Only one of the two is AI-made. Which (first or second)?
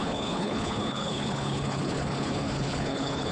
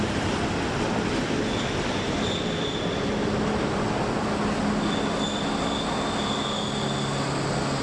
first